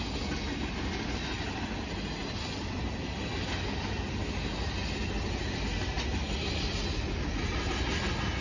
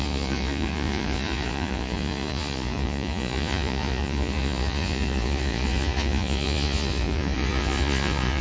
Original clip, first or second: first